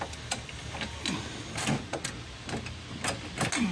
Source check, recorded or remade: recorded